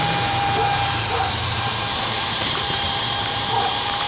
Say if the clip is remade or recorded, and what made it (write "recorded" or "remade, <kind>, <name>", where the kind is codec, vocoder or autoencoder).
remade, vocoder, BigVGAN v2